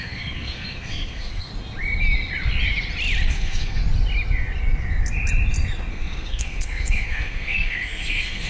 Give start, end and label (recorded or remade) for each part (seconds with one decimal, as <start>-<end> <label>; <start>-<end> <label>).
0.0-1.5 remade; 1.5-3.3 recorded; 3.3-3.8 remade; 3.8-5.9 recorded; 5.9-8.5 remade